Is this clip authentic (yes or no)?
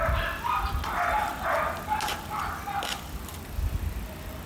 yes